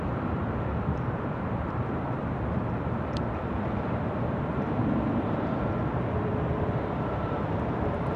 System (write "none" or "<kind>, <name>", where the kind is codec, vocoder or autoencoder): vocoder, BigVGAN v2